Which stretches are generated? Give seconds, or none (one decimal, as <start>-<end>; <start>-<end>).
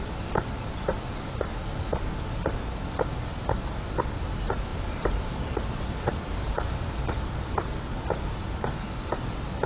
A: 4.7-7.1